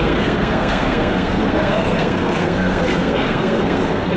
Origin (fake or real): fake